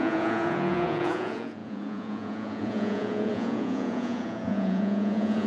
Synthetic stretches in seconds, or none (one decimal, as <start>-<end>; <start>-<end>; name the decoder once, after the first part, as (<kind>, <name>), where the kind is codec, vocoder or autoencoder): 0.0-5.5 (vocoder, Vocos)